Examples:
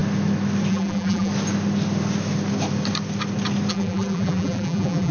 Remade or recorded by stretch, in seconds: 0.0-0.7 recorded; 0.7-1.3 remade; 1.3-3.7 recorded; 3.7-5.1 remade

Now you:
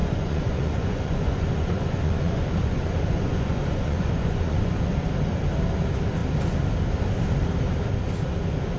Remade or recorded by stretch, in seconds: 0.0-4.7 remade; 4.7-8.8 recorded

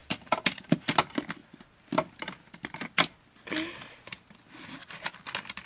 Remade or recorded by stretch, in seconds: 0.0-0.8 remade; 0.8-5.7 recorded

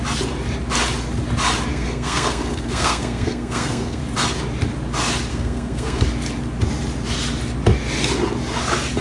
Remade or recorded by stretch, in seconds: 0.0-1.7 recorded; 1.7-4.0 remade; 4.0-5.3 recorded; 5.3-6.0 remade; 6.0-9.0 recorded

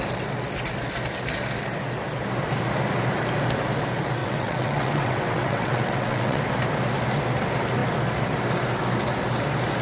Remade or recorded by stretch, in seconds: 0.0-4.2 recorded; 4.2-6.4 remade; 6.4-9.8 recorded

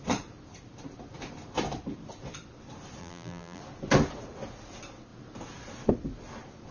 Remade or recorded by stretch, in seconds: 0.0-3.0 recorded; 3.0-3.6 remade; 3.6-6.7 recorded

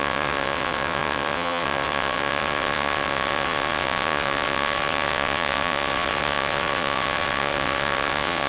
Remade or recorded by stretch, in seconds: 0.0-8.5 remade